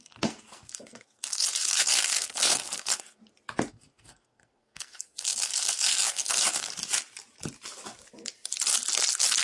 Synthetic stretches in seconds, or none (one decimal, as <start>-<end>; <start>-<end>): 0.0-3.2; 3.7-6.7